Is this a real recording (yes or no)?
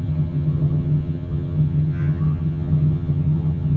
no